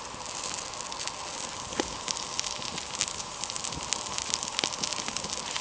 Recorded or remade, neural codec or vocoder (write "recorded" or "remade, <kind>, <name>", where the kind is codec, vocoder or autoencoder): recorded